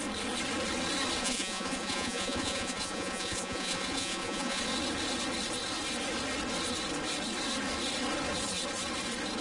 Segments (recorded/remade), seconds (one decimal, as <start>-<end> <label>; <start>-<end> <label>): 0.0-1.2 recorded; 1.2-4.6 remade; 4.6-9.4 recorded